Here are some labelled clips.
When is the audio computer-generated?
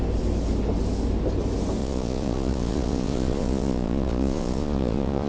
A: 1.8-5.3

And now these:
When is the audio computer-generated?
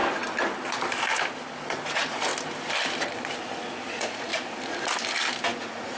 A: 1.9-2.3; 3.9-4.3; 5.6-6.0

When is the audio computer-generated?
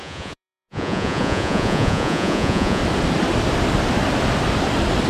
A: 0.0-2.8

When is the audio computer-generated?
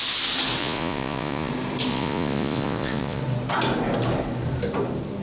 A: 0.6-1.5; 1.9-3.2